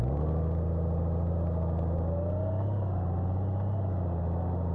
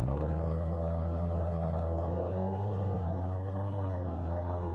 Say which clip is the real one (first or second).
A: first